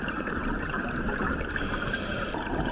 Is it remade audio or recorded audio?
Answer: remade